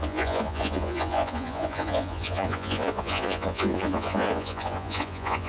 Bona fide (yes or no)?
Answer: no